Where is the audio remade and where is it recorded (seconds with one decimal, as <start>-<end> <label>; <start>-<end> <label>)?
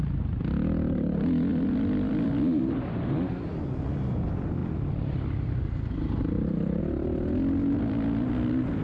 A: 0.0-1.5 recorded; 1.5-3.7 remade; 3.7-4.6 recorded; 4.6-6.8 remade; 6.8-8.8 recorded